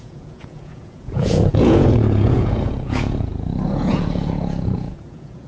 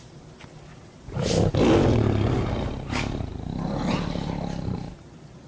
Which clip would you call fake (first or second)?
first